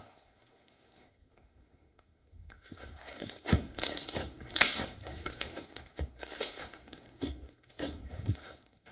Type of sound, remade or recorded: remade